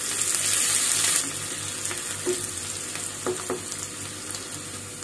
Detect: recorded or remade recorded